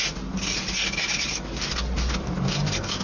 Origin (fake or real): real